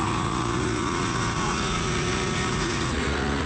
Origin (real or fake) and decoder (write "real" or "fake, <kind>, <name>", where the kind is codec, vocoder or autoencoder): fake, vocoder, Vocos